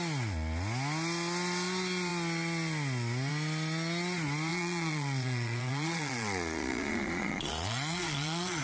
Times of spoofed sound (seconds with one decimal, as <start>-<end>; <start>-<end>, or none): 4.5-8.6